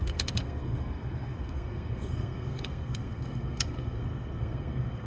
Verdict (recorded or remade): remade